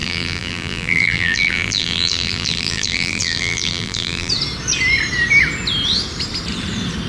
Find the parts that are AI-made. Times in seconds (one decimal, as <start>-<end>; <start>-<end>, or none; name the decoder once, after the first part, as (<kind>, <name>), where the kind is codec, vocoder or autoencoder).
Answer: 0.0-4.3 (vocoder, BigVGAN v2)